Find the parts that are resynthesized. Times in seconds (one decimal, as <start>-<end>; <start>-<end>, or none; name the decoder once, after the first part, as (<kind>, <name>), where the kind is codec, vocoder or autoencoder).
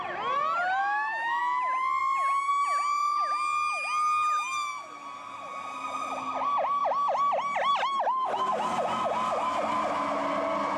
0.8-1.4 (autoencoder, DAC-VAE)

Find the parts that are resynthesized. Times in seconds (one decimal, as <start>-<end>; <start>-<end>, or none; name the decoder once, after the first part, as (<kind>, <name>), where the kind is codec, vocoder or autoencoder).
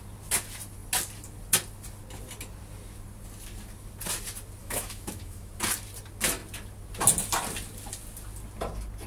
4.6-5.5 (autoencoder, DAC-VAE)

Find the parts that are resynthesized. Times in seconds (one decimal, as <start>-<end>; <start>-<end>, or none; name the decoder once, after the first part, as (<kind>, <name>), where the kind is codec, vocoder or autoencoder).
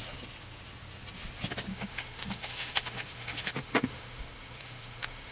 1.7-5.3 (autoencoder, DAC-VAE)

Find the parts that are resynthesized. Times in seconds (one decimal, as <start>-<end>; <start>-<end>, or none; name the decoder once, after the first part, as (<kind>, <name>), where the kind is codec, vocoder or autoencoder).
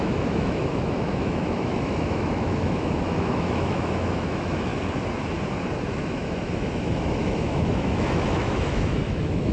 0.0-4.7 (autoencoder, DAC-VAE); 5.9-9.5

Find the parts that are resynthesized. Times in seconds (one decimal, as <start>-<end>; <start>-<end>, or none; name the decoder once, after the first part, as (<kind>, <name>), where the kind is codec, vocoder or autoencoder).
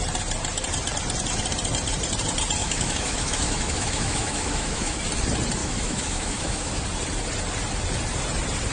2.6-5.0 (autoencoder, DAC-VAE); 5.6-6.7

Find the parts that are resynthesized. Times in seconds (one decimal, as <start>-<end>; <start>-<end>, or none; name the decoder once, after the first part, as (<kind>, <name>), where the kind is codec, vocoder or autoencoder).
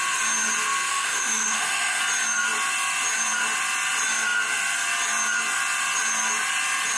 0.9-2.0 (autoencoder, DAC-VAE)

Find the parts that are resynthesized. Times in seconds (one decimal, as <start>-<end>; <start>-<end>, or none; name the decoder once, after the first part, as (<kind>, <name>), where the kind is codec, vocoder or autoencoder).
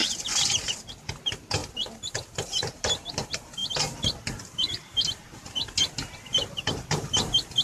none